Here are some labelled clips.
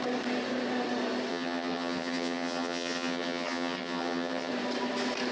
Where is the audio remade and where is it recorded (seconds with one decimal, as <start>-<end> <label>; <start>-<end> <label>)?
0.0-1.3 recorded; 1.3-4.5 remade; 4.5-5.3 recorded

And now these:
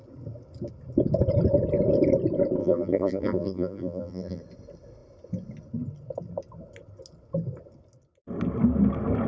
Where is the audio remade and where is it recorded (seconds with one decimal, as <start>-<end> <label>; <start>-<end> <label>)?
0.0-2.6 recorded; 2.6-4.4 remade; 4.4-9.3 recorded

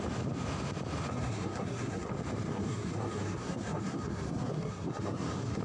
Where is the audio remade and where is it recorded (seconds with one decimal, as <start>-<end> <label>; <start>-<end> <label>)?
0.0-1.1 recorded; 1.1-2.1 remade; 2.1-2.5 recorded; 2.5-5.6 remade

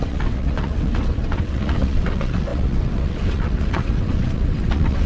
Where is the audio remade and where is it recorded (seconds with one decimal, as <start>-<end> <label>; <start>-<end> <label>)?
0.0-5.1 remade

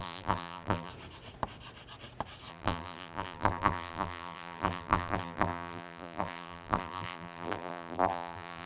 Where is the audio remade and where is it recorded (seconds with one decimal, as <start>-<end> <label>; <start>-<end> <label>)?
0.0-0.9 remade; 0.9-2.5 recorded; 2.5-8.7 remade

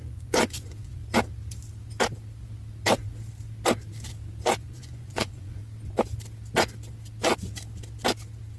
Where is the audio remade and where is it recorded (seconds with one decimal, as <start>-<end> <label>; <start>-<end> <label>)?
0.0-1.0 remade; 1.0-4.6 recorded; 4.6-5.6 remade; 5.6-8.6 recorded

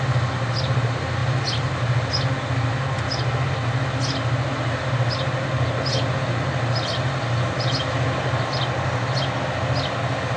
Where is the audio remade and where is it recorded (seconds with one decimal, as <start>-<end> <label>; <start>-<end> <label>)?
0.0-10.4 recorded

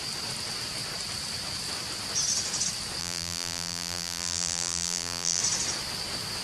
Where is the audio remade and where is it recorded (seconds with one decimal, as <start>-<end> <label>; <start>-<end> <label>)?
0.0-3.0 recorded; 3.0-5.4 remade; 5.4-6.4 recorded